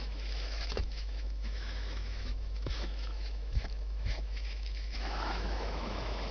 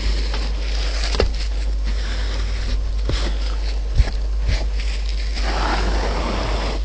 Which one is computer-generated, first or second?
first